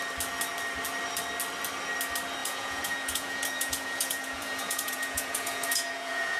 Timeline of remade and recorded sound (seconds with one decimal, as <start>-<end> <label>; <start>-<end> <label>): 0.0-2.4 recorded; 2.4-6.4 remade

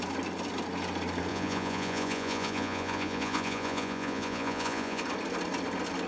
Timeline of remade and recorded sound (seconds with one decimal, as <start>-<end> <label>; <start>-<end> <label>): 0.0-1.3 recorded; 1.3-5.0 remade; 5.0-6.1 recorded

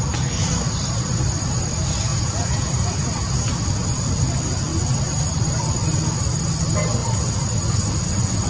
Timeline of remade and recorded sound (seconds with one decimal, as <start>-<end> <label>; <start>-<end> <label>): 0.0-2.1 recorded; 2.1-3.6 remade; 3.6-8.5 recorded

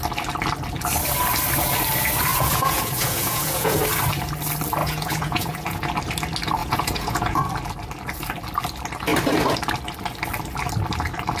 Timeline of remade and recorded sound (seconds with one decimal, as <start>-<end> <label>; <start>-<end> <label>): 0.0-2.3 recorded; 2.3-3.8 remade; 3.8-4.8 recorded; 4.8-5.9 remade; 5.9-6.6 recorded; 6.6-7.4 remade; 7.4-11.4 recorded

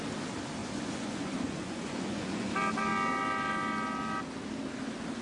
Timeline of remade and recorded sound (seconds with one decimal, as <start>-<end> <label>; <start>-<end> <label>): 0.0-0.6 recorded; 0.6-2.5 remade; 2.5-5.2 recorded

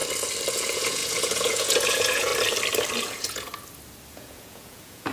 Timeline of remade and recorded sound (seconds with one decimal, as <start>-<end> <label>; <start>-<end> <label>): 0.0-0.5 recorded; 0.5-2.3 remade; 2.3-3.0 recorded; 3.0-3.5 remade; 3.5-4.1 recorded; 4.1-5.1 remade